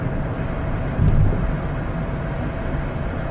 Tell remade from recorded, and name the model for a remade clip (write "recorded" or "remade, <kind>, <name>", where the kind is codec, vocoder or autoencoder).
recorded